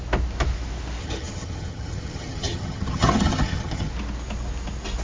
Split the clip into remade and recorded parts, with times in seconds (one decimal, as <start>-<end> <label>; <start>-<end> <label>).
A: 0.0-1.0 recorded; 1.0-3.9 remade; 3.9-5.0 recorded